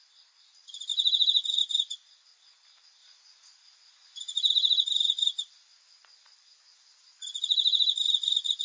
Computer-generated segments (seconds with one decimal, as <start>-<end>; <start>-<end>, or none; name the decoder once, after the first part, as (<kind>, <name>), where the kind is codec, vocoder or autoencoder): 0.0-0.9 (vocoder, BigVGAN v2); 1.6-3.0; 4.5-8.6